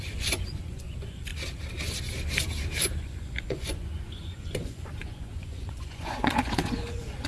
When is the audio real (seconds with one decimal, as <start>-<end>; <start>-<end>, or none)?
1.3-3.0